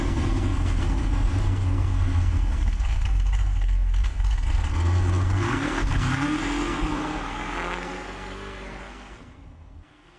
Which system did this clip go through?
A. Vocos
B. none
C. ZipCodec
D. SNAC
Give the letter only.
D